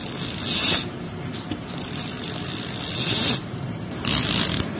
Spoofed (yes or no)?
no